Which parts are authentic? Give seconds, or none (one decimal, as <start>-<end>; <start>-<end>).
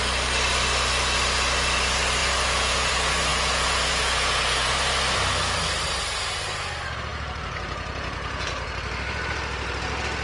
0.0-2.2; 2.9-3.3; 4.7-7.1; 8.7-10.2